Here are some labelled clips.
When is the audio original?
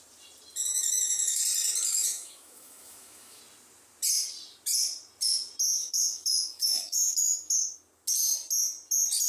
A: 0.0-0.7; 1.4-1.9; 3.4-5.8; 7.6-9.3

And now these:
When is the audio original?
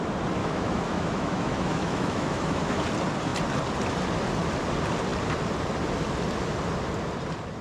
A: 0.0-0.4; 2.8-7.6